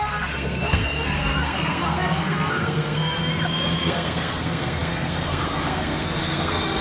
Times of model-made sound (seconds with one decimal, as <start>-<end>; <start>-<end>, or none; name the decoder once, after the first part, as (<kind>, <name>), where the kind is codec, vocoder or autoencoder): 0.0-3.2 (codec, SNAC); 3.8-6.8

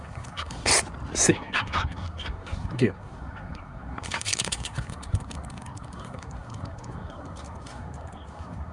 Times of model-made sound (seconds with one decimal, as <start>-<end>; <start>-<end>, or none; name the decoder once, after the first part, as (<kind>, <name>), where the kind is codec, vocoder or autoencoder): 0.0-0.7 (codec, SNAC); 1.3-8.7

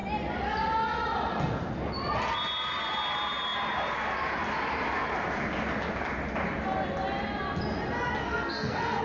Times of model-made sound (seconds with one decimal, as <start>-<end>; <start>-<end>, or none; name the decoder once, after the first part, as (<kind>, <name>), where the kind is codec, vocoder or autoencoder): 8.2-9.0 (codec, SNAC)

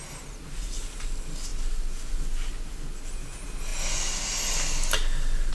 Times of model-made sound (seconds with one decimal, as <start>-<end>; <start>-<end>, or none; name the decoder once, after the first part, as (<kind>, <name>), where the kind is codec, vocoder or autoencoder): none

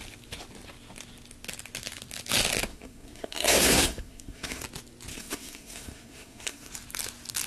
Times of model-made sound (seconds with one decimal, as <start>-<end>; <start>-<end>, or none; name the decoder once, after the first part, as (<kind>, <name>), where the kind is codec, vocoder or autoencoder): 2.7-4.6 (codec, SNAC); 5.1-6.7

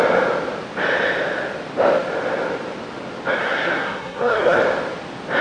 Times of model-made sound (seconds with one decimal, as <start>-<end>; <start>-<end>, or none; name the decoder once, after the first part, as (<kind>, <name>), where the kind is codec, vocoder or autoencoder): 3.4-4.6 (codec, SNAC)